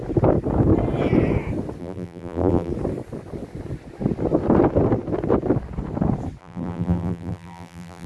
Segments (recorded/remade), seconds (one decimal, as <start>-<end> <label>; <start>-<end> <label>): 0.0-1.8 recorded; 1.8-2.7 remade; 2.7-6.4 recorded; 6.4-8.1 remade